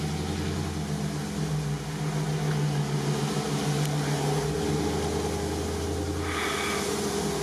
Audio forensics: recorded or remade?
recorded